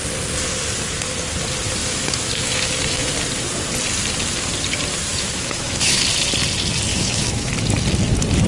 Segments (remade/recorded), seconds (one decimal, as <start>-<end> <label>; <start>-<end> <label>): 0.0-1.8 recorded; 1.8-3.1 remade; 3.1-5.1 recorded; 5.1-6.0 remade; 6.0-6.9 recorded; 6.9-7.5 remade; 7.5-8.5 recorded